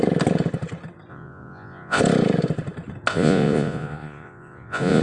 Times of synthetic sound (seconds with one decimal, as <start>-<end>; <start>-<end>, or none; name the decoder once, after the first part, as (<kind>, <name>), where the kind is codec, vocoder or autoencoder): 1.1-2.0 (vocoder, Vocos); 3.1-5.0